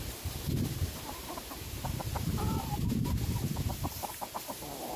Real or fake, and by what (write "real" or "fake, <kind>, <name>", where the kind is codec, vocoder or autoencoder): fake, vocoder, BigVGAN v2